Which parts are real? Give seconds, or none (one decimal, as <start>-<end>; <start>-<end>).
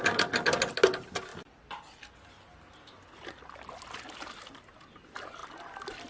0.0-6.1